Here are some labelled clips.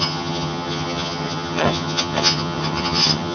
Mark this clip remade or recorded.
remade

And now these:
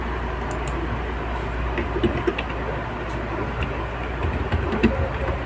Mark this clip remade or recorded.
recorded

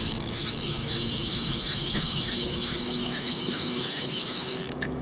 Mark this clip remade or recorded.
remade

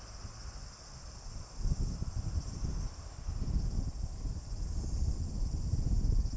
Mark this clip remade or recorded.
recorded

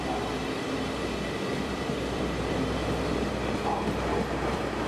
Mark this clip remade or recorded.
remade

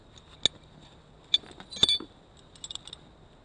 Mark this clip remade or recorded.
recorded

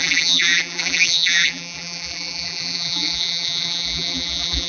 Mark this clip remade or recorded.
remade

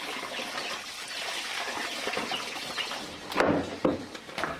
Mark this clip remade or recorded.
recorded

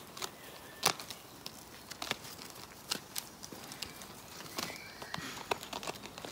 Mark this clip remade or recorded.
recorded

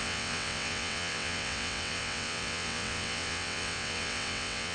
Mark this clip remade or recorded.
remade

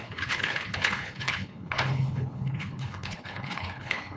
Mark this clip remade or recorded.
remade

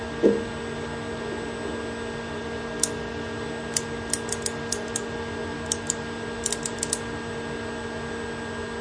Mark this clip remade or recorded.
recorded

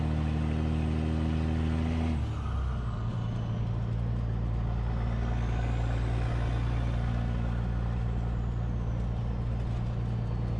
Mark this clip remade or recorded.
recorded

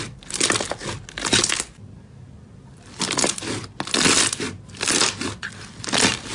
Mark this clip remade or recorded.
recorded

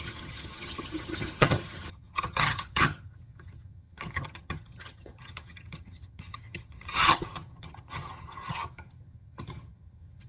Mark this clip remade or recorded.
remade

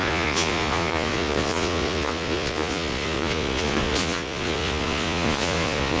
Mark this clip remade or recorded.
remade